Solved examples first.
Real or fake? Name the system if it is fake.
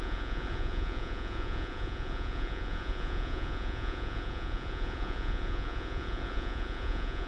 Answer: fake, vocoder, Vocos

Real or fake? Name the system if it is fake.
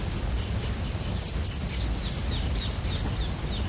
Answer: real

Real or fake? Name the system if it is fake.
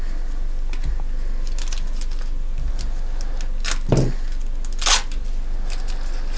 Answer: real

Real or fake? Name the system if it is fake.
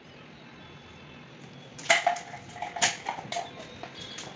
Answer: real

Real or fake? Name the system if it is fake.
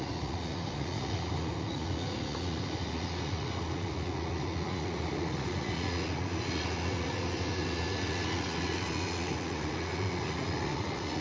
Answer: fake, vocoder, Vocos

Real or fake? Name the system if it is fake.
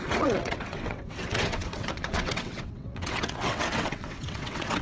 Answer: fake, vocoder, WaveNeXt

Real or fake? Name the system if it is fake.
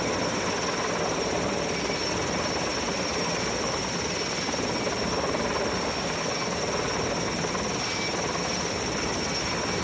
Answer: real